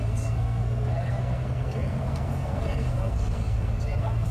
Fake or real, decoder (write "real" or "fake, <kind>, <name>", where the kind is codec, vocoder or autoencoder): fake, codec, SNAC